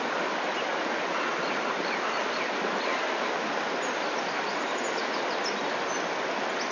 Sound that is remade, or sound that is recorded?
recorded